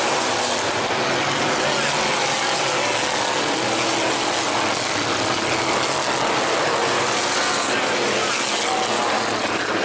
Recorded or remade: recorded